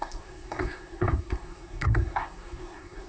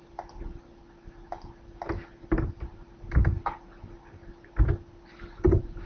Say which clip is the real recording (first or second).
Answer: second